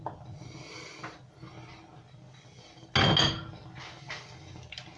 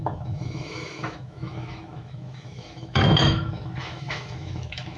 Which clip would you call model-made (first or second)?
second